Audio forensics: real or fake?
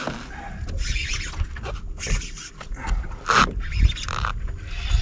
real